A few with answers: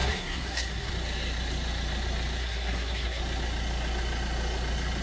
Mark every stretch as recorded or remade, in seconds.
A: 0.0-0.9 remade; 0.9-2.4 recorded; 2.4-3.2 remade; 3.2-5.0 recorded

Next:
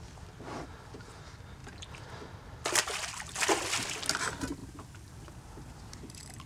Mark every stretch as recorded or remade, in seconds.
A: 0.0-6.5 recorded

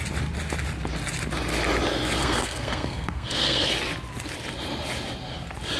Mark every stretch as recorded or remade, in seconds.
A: 0.0-2.2 recorded; 2.2-3.7 remade; 3.7-5.8 recorded

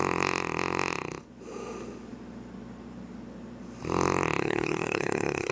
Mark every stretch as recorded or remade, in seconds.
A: 0.0-4.4 recorded; 4.4-5.5 remade

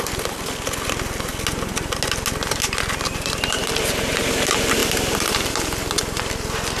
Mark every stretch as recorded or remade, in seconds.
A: 0.0-6.8 recorded

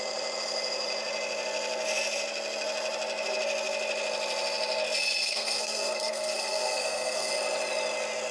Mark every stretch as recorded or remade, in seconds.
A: 0.0-5.2 recorded; 5.2-7.3 remade; 7.3-8.3 recorded

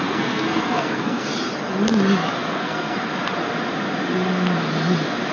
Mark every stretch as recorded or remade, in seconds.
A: 0.0-1.3 remade; 1.3-2.5 recorded; 2.5-3.1 remade; 3.1-5.3 recorded

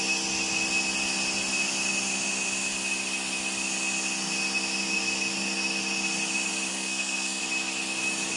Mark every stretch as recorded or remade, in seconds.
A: 0.0-6.7 recorded; 6.7-7.4 remade; 7.4-8.4 recorded